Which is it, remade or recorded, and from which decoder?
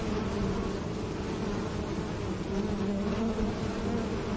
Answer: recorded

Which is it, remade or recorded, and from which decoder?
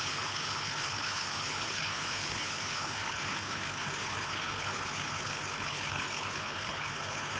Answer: remade, codec, HILCodec